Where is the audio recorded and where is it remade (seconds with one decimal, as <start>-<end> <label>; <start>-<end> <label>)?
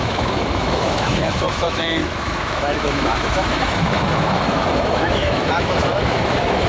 0.0-6.7 remade